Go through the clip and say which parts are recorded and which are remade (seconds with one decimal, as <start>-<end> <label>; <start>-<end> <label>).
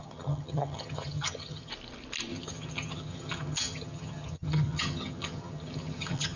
0.0-1.7 remade; 1.7-2.3 recorded; 2.3-6.4 remade